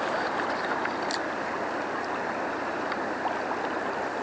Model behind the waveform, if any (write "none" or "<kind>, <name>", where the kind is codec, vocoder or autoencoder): none